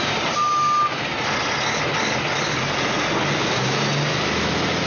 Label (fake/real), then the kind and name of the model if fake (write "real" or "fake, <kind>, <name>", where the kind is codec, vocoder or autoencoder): real